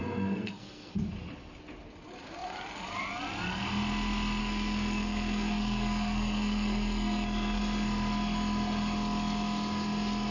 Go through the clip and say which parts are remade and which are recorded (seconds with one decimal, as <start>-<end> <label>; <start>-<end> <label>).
0.0-0.9 remade; 0.9-4.4 recorded; 4.4-7.6 remade; 7.6-10.3 recorded